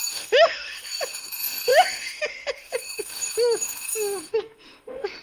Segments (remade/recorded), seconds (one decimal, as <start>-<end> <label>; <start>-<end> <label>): 0.0-5.2 remade